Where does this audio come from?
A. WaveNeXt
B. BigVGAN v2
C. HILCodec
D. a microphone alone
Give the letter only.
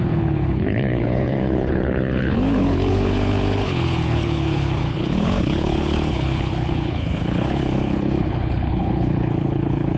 C